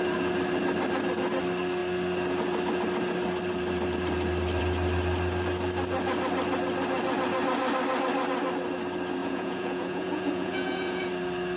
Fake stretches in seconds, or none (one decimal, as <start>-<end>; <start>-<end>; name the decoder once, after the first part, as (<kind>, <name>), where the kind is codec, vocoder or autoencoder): 9.2-11.1 (vocoder, Vocos)